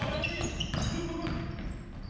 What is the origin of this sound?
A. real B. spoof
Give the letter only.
A